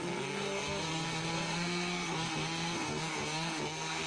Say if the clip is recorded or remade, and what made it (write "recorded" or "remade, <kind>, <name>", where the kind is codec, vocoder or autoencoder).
remade, codec, SNAC